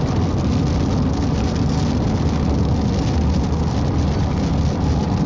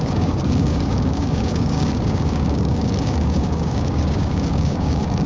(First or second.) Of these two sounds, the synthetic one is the second